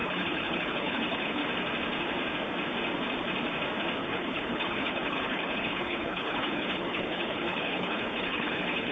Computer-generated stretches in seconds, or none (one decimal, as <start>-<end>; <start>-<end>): 0.0-1.4; 4.0-8.9